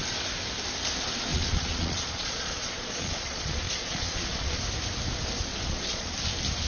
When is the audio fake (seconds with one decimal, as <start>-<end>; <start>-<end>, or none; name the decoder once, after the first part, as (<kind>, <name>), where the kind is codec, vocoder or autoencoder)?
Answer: 1.3-4.6 (vocoder, Vocos); 5.5-6.1